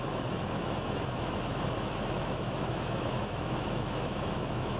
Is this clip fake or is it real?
fake